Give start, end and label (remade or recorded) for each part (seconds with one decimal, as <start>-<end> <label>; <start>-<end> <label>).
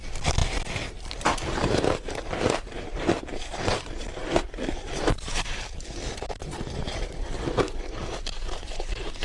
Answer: 0.0-9.2 remade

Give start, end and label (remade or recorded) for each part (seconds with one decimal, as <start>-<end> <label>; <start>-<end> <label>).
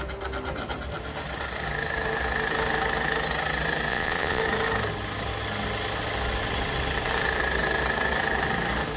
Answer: 0.0-3.9 recorded; 3.9-4.4 remade; 4.4-9.0 recorded